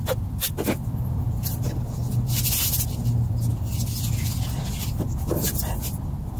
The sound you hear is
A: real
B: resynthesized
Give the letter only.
A